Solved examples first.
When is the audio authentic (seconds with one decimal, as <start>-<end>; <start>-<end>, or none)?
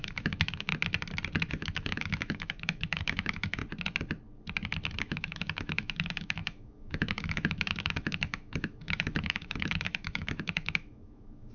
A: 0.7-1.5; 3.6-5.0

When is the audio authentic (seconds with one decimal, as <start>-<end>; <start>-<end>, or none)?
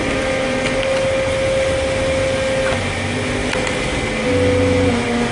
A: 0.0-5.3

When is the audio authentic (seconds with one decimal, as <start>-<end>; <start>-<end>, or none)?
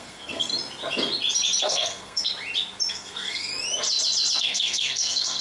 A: 0.5-1.6; 2.3-2.9; 3.5-4.4